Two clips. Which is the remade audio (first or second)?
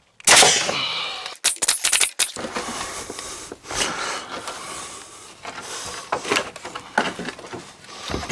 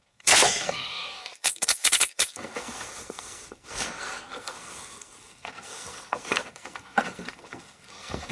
second